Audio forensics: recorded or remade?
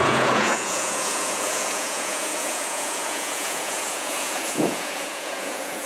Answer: remade